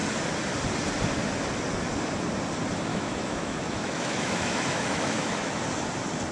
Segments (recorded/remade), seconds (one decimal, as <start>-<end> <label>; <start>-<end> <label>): 0.0-2.9 recorded; 2.9-5.6 remade; 5.6-6.3 recorded